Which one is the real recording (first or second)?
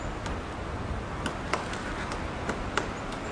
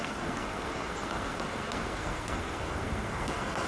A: first